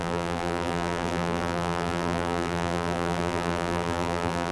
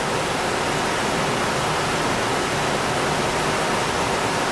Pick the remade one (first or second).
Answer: first